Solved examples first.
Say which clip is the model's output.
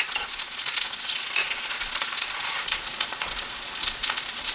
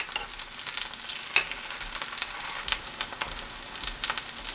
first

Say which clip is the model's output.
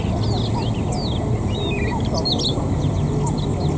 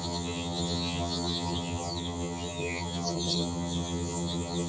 second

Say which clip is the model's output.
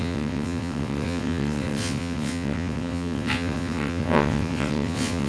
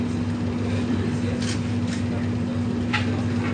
first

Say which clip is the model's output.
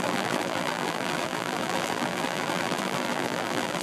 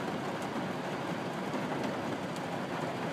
first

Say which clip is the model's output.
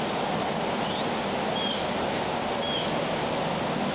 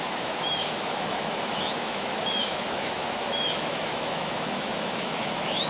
second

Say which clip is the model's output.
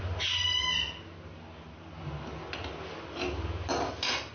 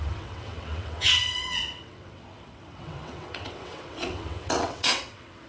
second